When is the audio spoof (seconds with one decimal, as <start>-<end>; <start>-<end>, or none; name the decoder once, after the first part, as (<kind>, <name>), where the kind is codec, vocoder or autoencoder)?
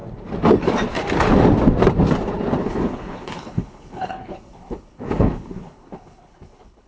2.6-6.9 (codec, HILCodec)